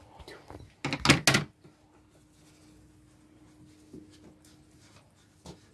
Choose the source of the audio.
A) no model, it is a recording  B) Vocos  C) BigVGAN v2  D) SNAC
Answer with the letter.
A